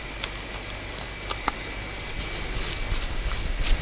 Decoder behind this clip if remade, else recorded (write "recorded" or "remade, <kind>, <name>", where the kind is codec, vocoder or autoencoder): recorded